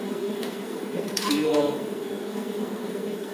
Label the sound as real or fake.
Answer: fake